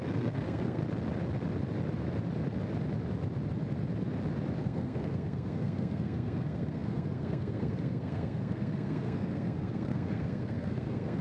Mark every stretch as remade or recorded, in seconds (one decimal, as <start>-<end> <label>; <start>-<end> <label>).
0.0-0.8 remade; 0.8-4.6 recorded; 4.6-11.2 remade